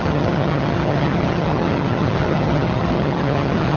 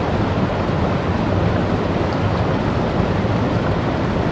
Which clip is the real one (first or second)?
second